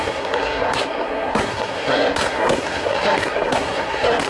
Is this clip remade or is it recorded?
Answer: remade